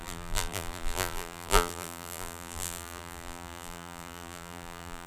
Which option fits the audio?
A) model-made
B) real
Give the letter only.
A